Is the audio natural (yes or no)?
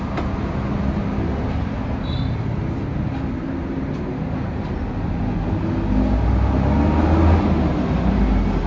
yes